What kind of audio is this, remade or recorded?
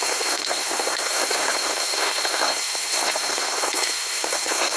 remade